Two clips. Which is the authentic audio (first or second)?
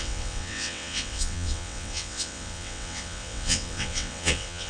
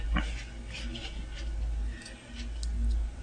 second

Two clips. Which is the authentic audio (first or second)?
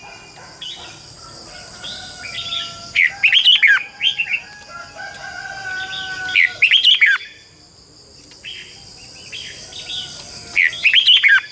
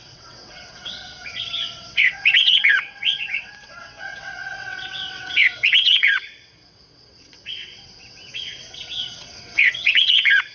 first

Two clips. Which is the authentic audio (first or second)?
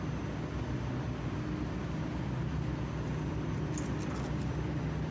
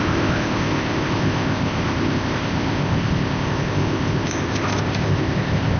first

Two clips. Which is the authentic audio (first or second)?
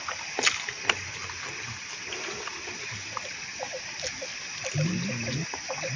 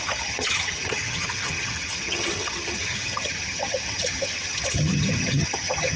first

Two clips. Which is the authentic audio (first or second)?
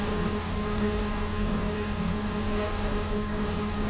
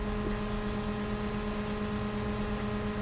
second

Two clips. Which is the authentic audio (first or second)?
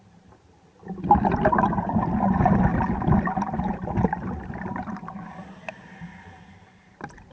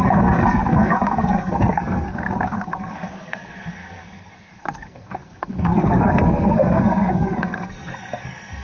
first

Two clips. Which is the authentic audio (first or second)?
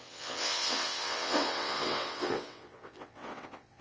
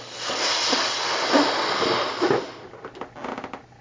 second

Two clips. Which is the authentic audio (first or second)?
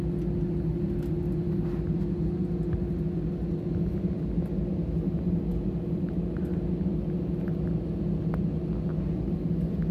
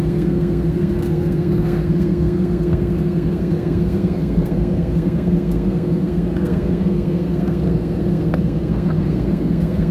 first